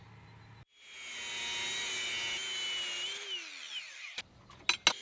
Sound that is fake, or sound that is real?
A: real